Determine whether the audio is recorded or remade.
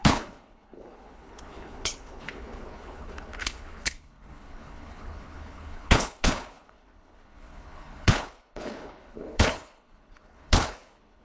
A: remade